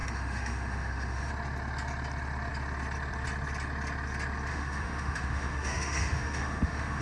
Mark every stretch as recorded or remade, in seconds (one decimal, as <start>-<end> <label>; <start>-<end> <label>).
0.0-1.3 remade; 1.3-4.5 recorded; 4.5-7.0 remade